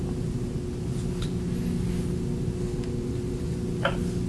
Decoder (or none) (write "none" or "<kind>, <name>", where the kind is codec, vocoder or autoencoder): none